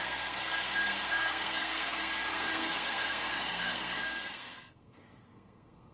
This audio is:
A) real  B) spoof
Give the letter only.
B